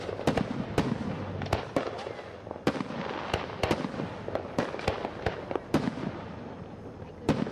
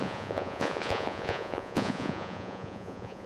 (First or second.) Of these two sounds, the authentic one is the first